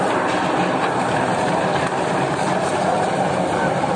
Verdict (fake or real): real